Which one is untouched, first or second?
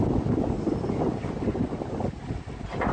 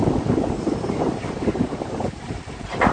first